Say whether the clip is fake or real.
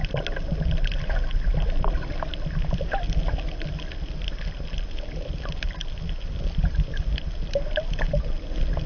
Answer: real